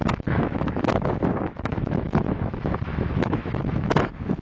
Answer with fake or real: fake